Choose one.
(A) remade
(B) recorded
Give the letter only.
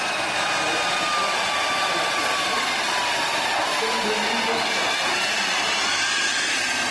B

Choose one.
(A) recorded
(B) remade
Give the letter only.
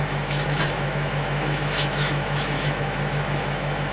B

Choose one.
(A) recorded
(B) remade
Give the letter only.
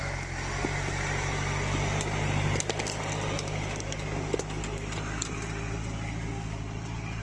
A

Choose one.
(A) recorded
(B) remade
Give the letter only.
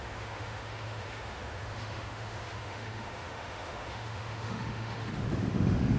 B